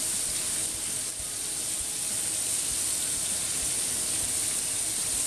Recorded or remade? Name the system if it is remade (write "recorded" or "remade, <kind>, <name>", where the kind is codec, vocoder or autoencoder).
recorded